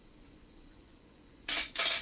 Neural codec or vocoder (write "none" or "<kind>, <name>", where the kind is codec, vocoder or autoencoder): vocoder, Vocos